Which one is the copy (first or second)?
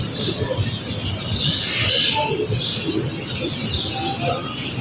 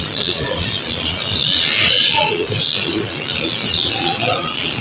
second